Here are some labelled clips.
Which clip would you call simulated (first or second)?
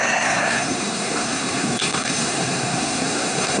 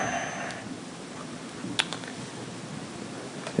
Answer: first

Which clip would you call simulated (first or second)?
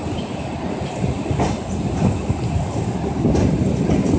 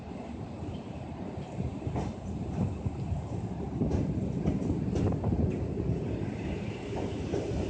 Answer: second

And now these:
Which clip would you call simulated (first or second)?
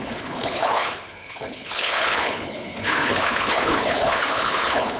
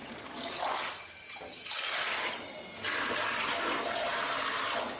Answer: first